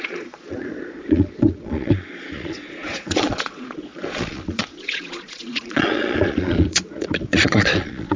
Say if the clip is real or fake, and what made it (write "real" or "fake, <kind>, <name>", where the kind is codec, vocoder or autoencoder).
fake, vocoder, Vocos